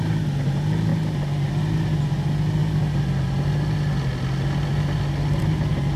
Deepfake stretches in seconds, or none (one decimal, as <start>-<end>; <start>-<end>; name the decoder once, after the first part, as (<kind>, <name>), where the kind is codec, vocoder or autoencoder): none